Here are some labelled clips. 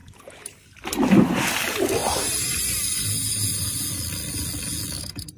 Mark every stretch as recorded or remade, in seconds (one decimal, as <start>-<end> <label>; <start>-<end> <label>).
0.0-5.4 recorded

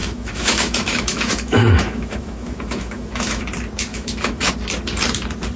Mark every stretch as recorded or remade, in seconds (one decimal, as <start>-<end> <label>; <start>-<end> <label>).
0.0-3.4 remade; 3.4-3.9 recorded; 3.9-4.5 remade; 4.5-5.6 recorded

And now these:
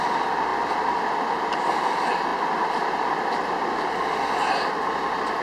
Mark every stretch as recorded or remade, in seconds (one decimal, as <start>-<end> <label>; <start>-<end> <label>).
0.0-5.4 recorded